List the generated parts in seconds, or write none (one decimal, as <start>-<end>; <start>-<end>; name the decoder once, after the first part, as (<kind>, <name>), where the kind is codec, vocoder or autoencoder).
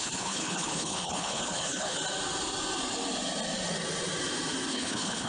0.0-2.0 (codec, HILCodec); 4.7-5.3